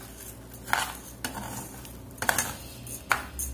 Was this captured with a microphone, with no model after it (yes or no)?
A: yes